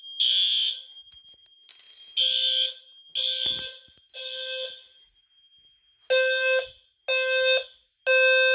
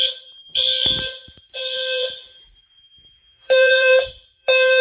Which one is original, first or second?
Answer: first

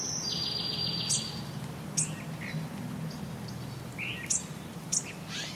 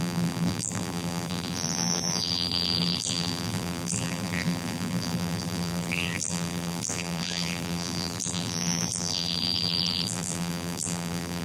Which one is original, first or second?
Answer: first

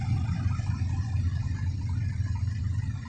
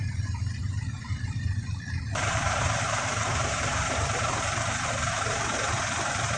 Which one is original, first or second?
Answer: first